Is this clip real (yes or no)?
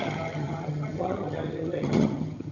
no